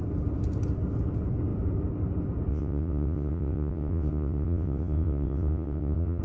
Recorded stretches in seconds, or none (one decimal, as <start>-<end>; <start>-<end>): 0.0-2.5